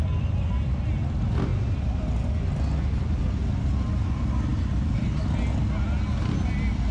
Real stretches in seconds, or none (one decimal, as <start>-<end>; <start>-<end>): 0.0-6.9